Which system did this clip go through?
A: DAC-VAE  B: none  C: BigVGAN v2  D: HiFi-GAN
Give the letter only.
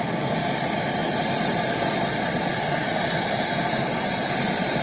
C